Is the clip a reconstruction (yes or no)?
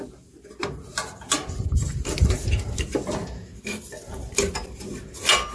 no